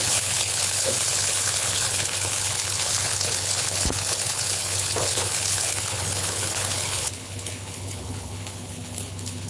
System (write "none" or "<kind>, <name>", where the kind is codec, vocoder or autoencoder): codec, HILCodec